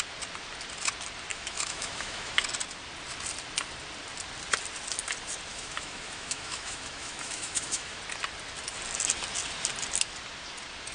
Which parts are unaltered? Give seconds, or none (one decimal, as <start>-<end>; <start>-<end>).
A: 0.0-1.3; 2.3-5.5; 8.0-10.9